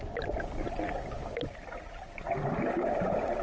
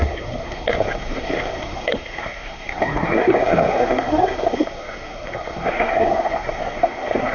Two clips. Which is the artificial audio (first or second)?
second